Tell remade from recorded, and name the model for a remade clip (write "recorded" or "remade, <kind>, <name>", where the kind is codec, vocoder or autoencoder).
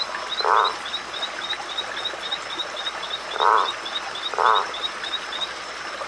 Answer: recorded